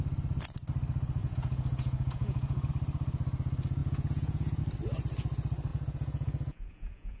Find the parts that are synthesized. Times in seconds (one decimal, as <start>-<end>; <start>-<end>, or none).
1.2-2.7; 3.8-4.6; 5.7-7.2